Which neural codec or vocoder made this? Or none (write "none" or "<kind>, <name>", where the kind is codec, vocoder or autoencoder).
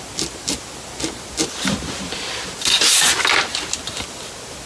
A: none